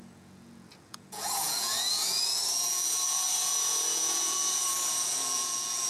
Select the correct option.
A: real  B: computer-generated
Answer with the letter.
B